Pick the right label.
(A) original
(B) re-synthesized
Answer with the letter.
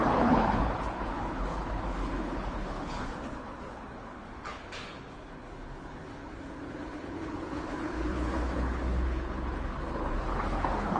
B